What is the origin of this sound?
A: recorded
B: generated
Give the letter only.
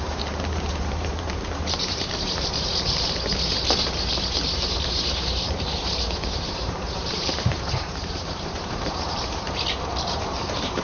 B